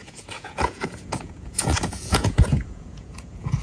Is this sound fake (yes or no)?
yes